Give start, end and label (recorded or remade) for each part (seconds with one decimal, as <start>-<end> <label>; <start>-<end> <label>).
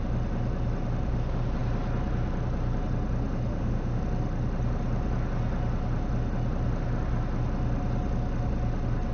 0.0-3.5 recorded; 3.5-4.0 remade; 4.0-9.1 recorded